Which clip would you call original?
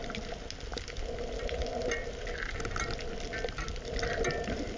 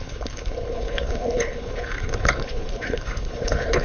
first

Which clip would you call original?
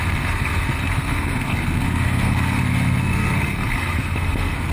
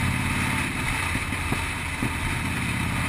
second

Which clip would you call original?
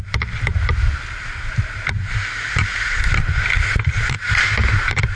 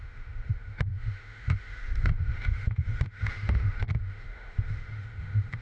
first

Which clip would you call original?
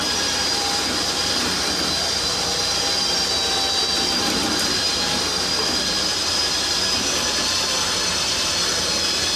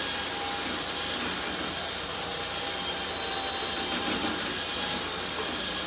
second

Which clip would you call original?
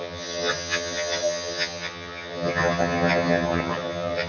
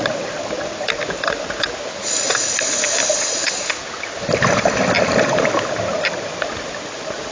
second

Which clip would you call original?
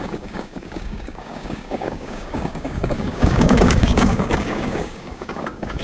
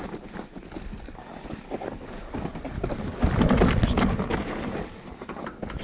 second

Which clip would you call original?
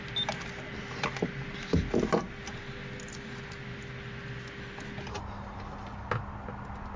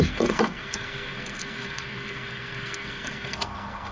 first